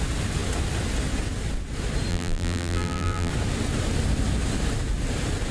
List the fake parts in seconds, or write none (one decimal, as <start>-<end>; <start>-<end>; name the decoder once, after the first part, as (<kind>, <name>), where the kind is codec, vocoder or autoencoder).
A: 2.1-3.3 (vocoder, BigVGAN v2)